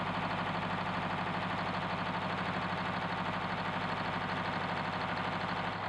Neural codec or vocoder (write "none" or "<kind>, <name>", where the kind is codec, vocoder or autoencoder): none